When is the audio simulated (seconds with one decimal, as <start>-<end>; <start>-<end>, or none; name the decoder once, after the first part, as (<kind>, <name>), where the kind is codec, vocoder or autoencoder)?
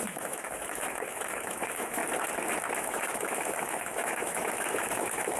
0.0-2.0 (autoencoder, DAC-VAE); 2.8-5.4